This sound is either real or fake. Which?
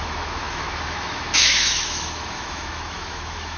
fake